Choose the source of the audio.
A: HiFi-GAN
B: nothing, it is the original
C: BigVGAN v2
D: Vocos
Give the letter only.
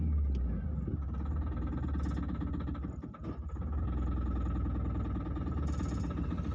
B